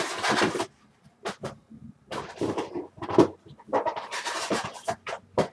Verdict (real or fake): fake